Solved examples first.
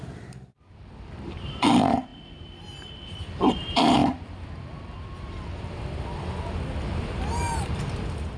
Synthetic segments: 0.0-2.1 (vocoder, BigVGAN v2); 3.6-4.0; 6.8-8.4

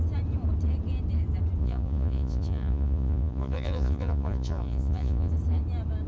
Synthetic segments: 1.6-5.3 (vocoder, Vocos)

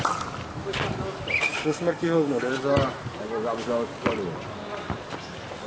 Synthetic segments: 1.5-2.5 (codec, DAC)

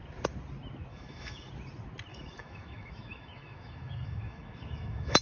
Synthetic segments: 0.9-1.5 (autoencoder, DAC-VAE); 2.1-5.2

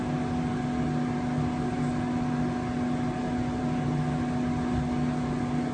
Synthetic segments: none